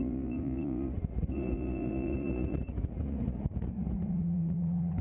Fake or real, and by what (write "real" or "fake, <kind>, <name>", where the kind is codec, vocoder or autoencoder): fake, vocoder, Vocos